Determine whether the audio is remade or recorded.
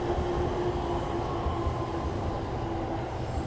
recorded